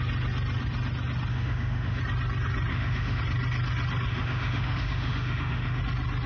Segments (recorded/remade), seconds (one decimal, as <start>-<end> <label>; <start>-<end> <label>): 0.0-1.3 recorded; 1.3-2.0 remade; 2.0-2.7 recorded; 2.7-3.2 remade; 3.2-4.1 recorded; 4.1-5.8 remade; 5.8-6.3 recorded